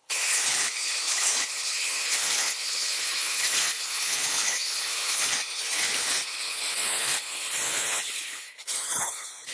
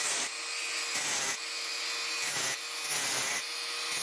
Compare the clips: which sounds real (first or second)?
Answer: second